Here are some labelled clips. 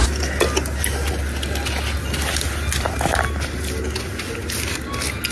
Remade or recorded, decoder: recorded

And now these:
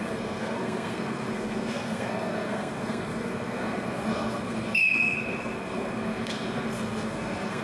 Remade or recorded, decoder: remade, codec, SNAC